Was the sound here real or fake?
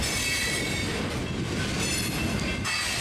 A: fake